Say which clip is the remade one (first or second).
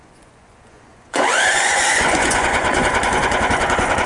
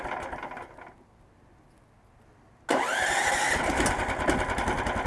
first